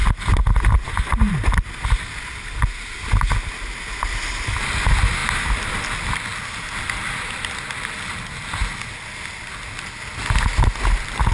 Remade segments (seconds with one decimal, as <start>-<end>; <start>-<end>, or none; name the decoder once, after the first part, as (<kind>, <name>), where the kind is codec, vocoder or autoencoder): none